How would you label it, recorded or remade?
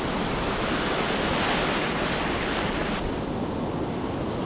recorded